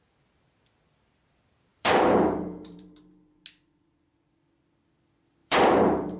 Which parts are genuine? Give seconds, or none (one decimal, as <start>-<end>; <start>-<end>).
0.0-1.7; 3.0-5.4